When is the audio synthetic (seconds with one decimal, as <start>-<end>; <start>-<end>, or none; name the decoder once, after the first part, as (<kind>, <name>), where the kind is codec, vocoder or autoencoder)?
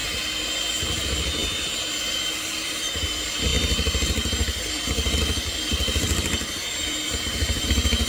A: 0.8-8.1 (vocoder, BigVGAN v2)